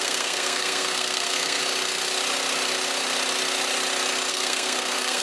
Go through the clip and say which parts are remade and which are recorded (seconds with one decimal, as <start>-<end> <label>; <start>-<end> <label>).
0.0-1.6 remade; 1.6-4.3 recorded; 4.3-5.2 remade